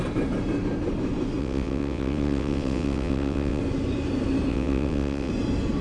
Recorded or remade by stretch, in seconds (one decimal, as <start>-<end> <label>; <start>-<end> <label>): 0.0-1.4 recorded; 1.4-3.6 remade; 3.6-4.5 recorded; 4.5-5.3 remade; 5.3-5.8 recorded